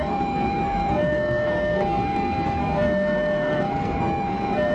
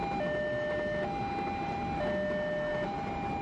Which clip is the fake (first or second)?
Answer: first